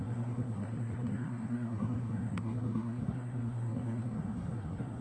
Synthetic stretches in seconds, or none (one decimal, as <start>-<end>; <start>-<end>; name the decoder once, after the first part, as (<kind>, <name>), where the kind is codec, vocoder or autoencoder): 0.0-5.0 (codec, SNAC)